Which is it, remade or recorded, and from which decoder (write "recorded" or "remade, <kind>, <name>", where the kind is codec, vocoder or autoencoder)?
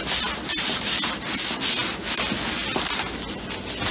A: recorded